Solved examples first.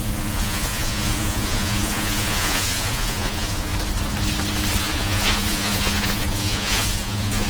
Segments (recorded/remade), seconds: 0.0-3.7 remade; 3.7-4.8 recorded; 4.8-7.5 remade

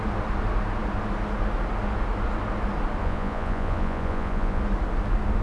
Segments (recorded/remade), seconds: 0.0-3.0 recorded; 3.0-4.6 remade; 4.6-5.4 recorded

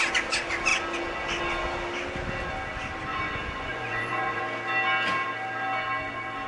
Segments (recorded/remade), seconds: 0.0-3.1 recorded; 3.1-4.4 remade; 4.4-6.5 recorded

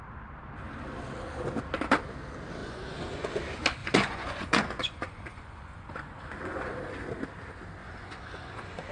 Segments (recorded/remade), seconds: 0.0-2.6 recorded; 2.6-3.4 remade; 3.4-3.8 recorded; 3.8-6.8 remade; 6.8-7.8 recorded; 7.8-8.9 remade

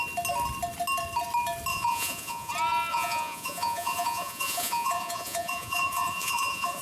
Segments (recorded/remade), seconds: 0.0-1.7 recorded; 1.7-2.5 remade; 2.5-2.9 recorded; 2.9-6.8 remade

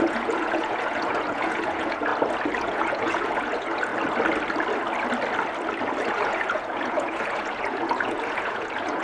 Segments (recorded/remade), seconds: 0.0-2.1 remade; 2.1-2.6 recorded; 2.6-3.9 remade; 3.9-6.1 recorded; 6.1-9.0 remade